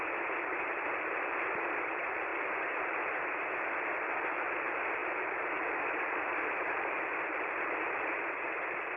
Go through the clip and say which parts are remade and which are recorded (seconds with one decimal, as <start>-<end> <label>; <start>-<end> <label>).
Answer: 0.0-9.0 remade